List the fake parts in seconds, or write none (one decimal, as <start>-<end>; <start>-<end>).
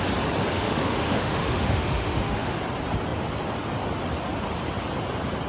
0.5-2.6